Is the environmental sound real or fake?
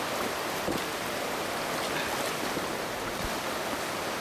real